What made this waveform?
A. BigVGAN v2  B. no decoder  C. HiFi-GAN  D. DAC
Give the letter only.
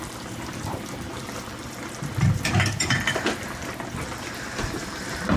A